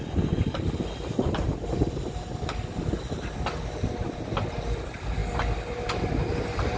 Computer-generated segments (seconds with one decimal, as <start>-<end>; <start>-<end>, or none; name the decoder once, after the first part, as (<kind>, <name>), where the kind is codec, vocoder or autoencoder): none